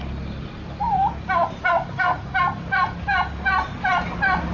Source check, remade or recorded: recorded